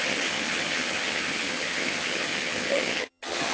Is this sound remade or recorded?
remade